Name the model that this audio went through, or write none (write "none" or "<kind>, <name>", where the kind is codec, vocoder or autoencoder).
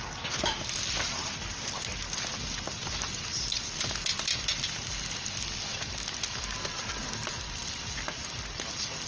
none